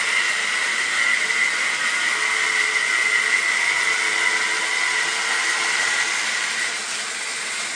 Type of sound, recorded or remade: recorded